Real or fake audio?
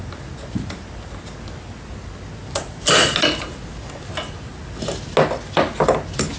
real